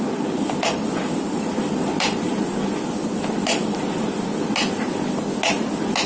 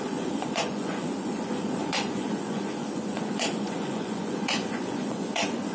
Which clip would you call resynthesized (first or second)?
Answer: second